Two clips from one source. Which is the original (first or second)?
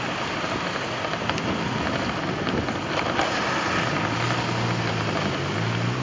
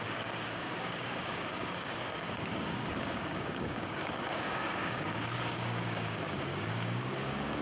first